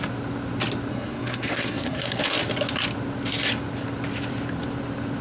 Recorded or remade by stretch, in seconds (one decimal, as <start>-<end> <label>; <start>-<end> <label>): 0.0-0.9 recorded; 0.9-2.2 remade; 2.2-5.2 recorded